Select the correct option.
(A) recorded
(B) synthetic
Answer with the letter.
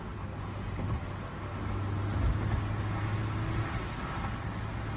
A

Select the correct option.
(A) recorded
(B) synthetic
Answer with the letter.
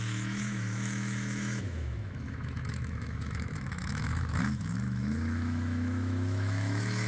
B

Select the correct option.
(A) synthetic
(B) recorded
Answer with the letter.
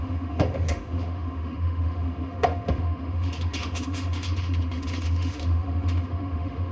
A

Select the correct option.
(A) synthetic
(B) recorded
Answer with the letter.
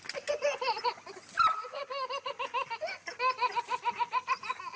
B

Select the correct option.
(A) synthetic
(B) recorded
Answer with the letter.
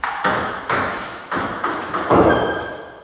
A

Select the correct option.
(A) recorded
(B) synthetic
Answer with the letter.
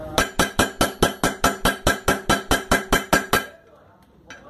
A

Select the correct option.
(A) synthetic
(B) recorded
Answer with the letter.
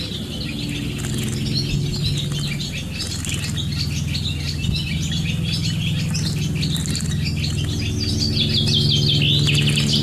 B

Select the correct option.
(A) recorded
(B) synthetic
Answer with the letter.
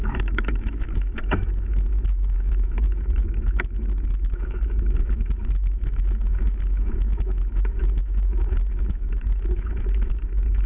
B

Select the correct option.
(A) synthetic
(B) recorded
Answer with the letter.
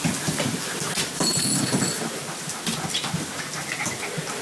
B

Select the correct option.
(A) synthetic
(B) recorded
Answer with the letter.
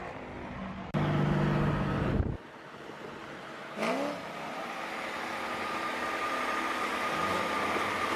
B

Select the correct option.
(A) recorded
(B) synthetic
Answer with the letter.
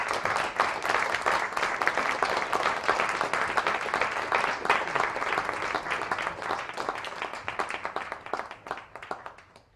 A